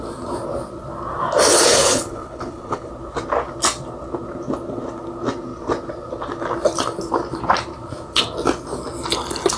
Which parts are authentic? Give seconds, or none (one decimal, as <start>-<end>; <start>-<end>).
0.0-1.5; 2.9-9.6